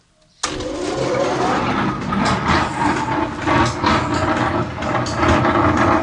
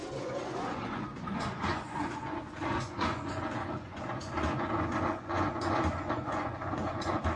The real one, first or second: first